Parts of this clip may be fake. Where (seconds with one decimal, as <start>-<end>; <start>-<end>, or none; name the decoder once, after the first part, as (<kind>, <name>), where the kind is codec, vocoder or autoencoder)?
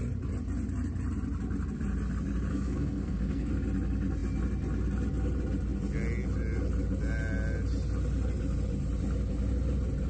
2.5-3.5 (codec, SNAC)